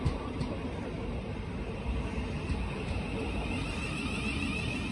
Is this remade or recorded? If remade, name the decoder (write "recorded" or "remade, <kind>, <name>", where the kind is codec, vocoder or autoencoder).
recorded